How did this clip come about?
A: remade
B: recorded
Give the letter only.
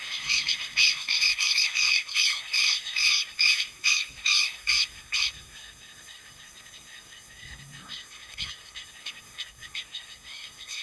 A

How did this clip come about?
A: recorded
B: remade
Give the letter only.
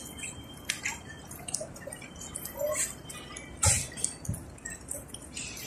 A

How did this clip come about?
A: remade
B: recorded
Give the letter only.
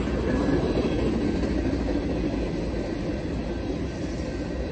B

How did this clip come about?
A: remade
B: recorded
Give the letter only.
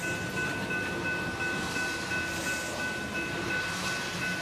B